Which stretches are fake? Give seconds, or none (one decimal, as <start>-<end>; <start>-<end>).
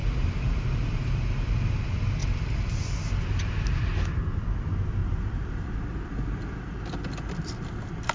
0.0-1.2; 2.2-2.8; 5.0-8.1